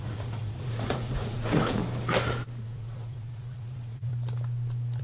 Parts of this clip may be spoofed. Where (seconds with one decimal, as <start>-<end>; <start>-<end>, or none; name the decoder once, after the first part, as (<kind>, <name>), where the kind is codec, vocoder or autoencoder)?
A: 0.0-1.8 (vocoder, Vocos); 2.6-4.1